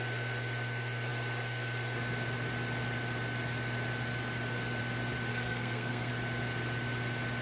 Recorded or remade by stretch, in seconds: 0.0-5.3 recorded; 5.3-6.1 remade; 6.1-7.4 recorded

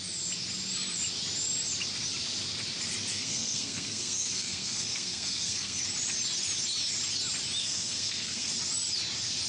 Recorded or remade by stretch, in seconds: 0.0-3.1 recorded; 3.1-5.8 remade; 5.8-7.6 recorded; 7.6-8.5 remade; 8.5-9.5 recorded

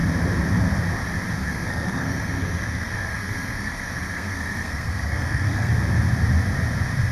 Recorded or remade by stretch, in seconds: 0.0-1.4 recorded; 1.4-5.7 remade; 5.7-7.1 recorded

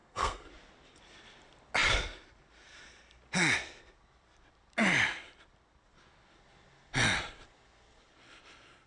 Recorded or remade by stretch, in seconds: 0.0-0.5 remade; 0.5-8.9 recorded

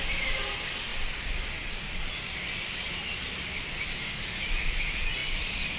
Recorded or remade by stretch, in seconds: 0.0-5.8 recorded

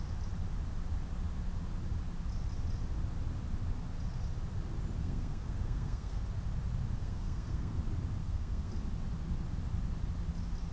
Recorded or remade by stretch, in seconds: 0.0-5.0 recorded; 5.0-6.2 remade; 6.2-7.0 recorded; 7.0-7.7 remade; 7.7-8.2 recorded; 8.2-8.7 remade; 8.7-10.7 recorded

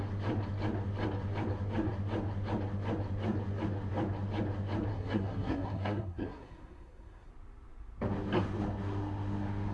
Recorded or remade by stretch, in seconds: 0.0-4.9 recorded; 4.9-7.3 remade; 7.3-9.7 recorded